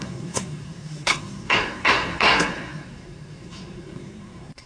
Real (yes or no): no